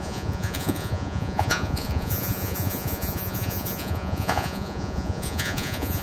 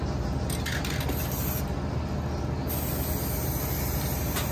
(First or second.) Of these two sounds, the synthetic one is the first